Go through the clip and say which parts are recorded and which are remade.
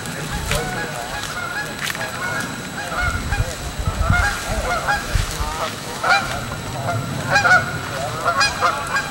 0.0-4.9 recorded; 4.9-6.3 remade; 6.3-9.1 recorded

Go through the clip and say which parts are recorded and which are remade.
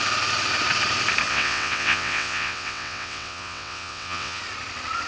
0.0-1.3 recorded; 1.3-4.4 remade; 4.4-5.1 recorded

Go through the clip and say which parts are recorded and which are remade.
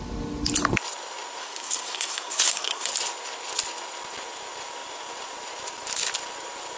0.0-1.4 recorded; 1.4-2.9 remade; 2.9-6.8 recorded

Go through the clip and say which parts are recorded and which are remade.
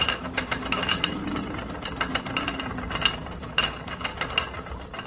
0.0-1.2 remade; 1.2-3.4 recorded; 3.4-4.1 remade; 4.1-5.1 recorded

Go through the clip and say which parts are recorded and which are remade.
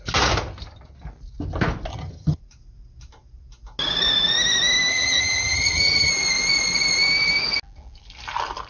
0.0-1.9 recorded; 1.9-2.4 remade; 2.4-4.9 recorded; 4.9-6.1 remade; 6.1-8.7 recorded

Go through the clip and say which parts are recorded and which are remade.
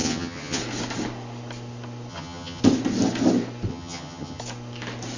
0.0-0.6 remade; 0.6-2.1 recorded; 2.1-2.6 remade; 2.6-3.7 recorded; 3.7-4.4 remade; 4.4-5.2 recorded